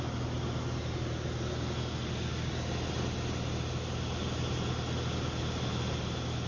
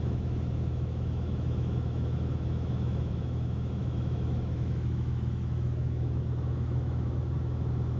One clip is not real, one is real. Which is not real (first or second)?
second